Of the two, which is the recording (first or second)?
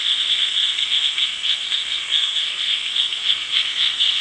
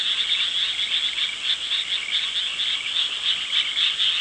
second